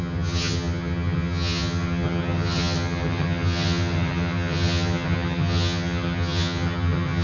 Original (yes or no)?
no